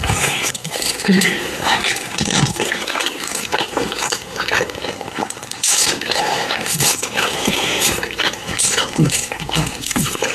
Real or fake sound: fake